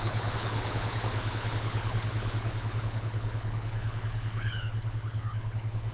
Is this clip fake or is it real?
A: fake